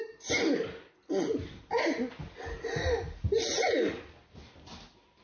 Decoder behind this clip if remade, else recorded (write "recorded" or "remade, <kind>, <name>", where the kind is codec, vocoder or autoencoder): recorded